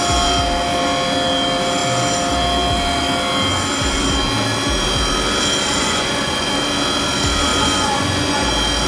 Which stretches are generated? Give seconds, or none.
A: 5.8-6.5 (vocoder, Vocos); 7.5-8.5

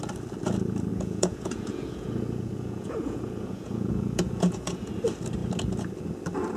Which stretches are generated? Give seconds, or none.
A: 0.9-4.9 (vocoder, Vocos)